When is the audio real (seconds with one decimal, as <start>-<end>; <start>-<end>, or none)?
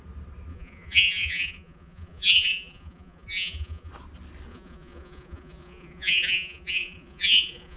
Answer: 0.0-0.5; 3.9-4.5